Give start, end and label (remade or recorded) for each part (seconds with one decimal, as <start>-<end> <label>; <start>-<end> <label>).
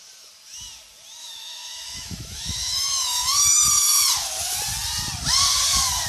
0.0-1.2 recorded; 1.2-3.7 remade; 3.7-6.1 recorded